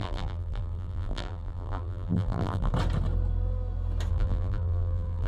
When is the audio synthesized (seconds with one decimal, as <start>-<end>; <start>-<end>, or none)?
0.0-2.7; 4.1-5.3